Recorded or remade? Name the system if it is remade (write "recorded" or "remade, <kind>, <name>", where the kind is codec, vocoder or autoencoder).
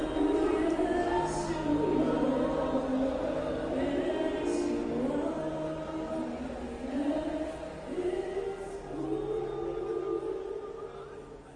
recorded